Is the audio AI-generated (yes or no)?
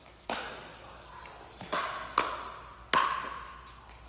no